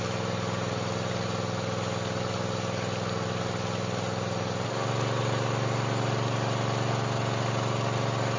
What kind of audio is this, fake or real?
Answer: real